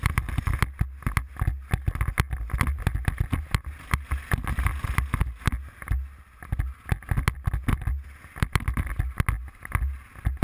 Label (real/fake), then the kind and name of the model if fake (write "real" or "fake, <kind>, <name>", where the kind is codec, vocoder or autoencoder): real